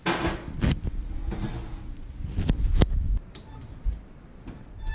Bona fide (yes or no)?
yes